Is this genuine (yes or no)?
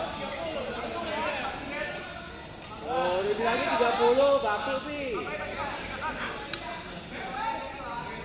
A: yes